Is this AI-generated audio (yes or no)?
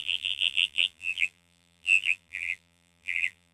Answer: yes